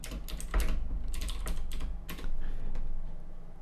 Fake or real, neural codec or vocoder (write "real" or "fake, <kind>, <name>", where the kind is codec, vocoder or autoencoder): real